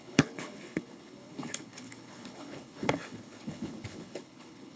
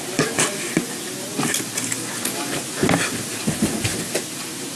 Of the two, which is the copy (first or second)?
first